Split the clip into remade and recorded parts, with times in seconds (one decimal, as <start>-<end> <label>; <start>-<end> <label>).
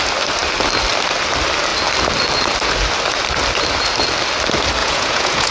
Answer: 0.0-4.8 recorded; 4.8-5.5 remade